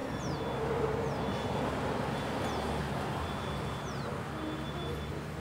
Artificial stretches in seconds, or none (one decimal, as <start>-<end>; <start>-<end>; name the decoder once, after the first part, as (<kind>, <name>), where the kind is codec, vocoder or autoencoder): none